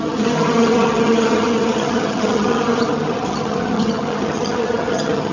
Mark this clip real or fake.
fake